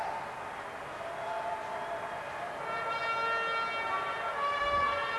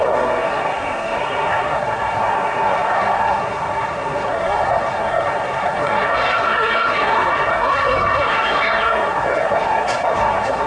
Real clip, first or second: first